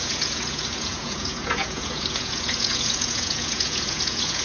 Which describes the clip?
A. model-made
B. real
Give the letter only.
A